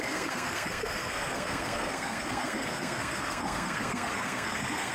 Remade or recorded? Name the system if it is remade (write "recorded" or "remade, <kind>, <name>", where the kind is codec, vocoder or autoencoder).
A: remade, codec, SNAC